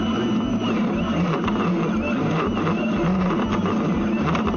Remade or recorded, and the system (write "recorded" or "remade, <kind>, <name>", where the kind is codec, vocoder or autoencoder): recorded